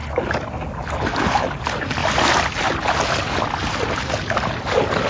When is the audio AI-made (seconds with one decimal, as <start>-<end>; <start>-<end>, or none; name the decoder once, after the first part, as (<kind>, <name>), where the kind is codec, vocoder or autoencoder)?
none